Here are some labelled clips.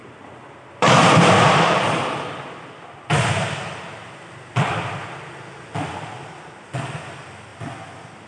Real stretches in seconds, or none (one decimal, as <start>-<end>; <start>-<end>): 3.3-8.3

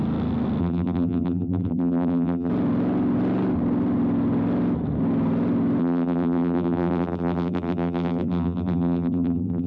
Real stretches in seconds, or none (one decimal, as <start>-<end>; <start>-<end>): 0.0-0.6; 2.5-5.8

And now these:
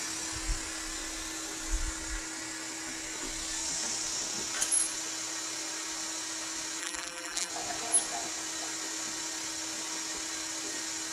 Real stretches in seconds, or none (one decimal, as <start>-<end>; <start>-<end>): 0.0-6.8; 7.5-11.1

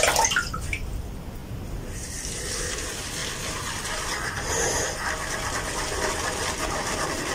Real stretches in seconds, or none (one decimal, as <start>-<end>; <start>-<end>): 0.0-3.2

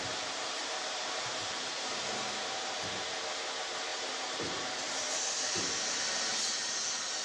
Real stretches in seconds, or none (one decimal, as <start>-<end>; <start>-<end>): 0.0-0.6; 2.1-3.9; 6.0-7.2